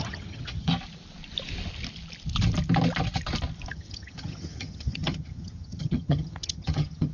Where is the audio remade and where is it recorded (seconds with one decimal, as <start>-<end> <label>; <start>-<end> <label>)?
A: 0.0-0.7 remade; 0.7-3.7 recorded; 3.7-7.1 remade

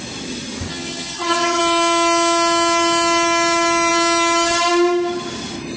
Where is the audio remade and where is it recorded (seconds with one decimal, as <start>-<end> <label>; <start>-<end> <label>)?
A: 0.0-0.7 recorded; 0.7-1.6 remade; 1.6-5.8 recorded

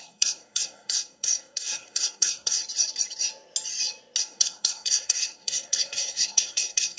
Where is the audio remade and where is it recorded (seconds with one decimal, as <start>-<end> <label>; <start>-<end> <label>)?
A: 0.0-2.6 remade; 2.6-4.2 recorded; 4.2-7.0 remade